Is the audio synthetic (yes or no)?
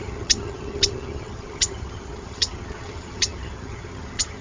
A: yes